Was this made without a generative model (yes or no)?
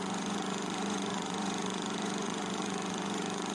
no